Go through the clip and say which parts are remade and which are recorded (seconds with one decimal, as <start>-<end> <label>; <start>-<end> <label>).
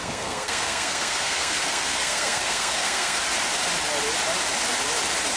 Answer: 0.0-3.2 remade; 3.2-5.4 recorded